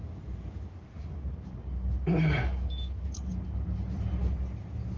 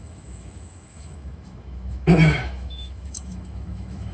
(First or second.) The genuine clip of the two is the first